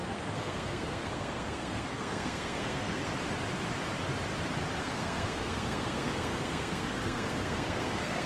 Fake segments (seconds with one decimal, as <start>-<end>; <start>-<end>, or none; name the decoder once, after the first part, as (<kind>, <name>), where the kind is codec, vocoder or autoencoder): 0.0-3.1 (codec, SNAC); 4.8-8.3